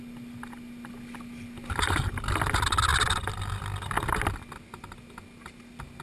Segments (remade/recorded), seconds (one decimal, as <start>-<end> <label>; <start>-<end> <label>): 0.0-6.0 recorded